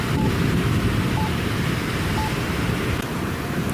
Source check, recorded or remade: remade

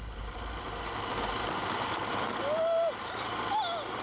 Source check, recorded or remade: recorded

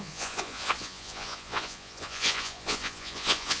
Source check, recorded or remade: remade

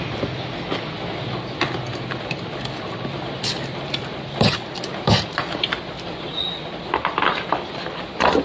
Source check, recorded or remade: recorded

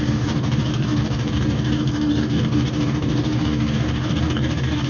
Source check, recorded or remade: remade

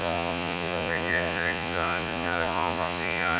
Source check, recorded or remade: remade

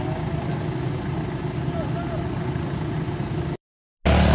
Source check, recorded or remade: recorded